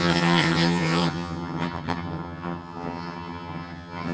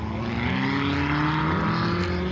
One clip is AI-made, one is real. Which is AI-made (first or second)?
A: first